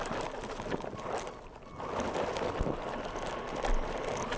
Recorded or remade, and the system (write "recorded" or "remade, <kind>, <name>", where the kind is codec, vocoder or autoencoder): recorded